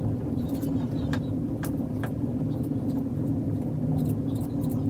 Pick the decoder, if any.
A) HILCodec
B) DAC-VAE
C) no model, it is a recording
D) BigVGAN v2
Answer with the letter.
C